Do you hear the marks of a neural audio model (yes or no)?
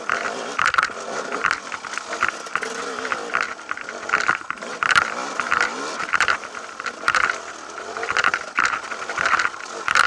no